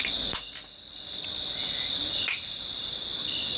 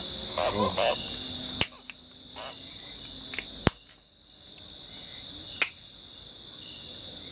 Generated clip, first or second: first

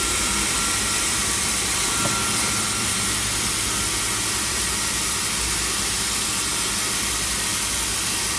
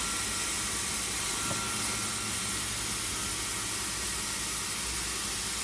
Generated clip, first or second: first